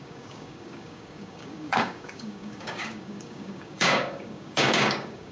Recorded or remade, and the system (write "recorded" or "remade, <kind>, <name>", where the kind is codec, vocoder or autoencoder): remade, codec, DAC